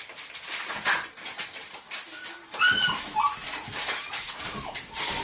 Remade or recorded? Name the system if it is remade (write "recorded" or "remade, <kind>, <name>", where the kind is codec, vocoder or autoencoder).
recorded